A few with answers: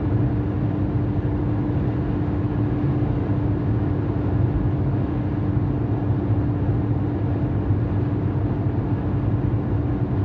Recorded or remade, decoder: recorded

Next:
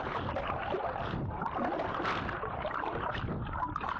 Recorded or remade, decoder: recorded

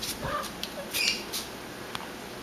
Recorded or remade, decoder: recorded